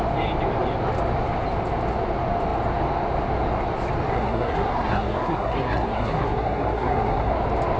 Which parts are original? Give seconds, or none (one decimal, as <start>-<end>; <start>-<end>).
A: 0.0-4.1; 7.3-7.8